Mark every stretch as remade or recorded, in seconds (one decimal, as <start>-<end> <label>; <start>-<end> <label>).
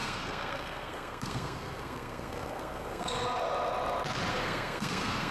0.0-3.2 remade; 3.2-4.3 recorded; 4.3-5.3 remade